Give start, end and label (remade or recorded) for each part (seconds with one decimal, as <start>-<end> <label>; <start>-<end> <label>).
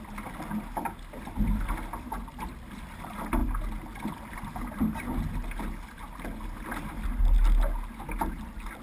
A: 0.0-8.8 recorded